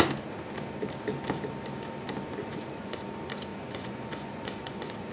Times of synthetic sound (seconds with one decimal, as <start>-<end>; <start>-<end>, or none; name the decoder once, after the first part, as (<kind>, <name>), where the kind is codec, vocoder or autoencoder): 2.4-3.0 (vocoder, Vocos); 3.5-5.1